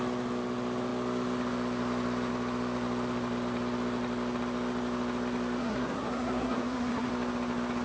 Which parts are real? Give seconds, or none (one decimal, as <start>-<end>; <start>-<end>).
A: 0.0-5.6; 7.1-7.8